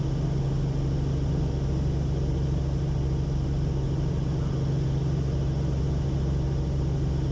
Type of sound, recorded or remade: recorded